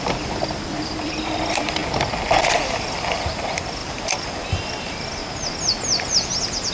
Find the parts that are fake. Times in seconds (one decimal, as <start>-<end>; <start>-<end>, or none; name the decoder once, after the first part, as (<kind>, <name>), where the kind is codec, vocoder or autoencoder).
0.0-1.8 (vocoder, BigVGAN v2); 2.6-5.2